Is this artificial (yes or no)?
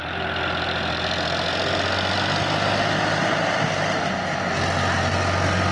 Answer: no